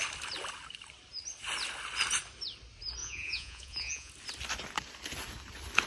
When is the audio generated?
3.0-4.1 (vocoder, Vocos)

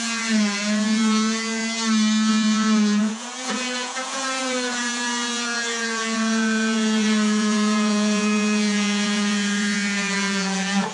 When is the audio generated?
0.0-1.6 (vocoder, Vocos); 2.3-10.9

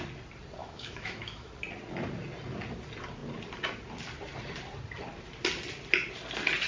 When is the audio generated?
0.6-1.5 (autoencoder, DAC-VAE)

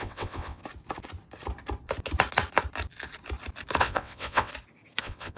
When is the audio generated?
0.0-0.6 (vocoder, WaveNeXt); 3.8-4.5; 5.0-5.4

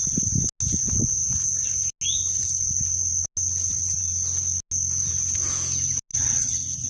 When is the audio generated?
6.1-6.9 (vocoder, WaveNeXt)